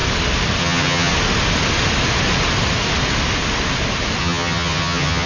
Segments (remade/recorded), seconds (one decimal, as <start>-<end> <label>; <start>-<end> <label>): 0.0-0.6 recorded; 0.6-1.1 remade; 1.1-4.2 recorded; 4.2-5.3 remade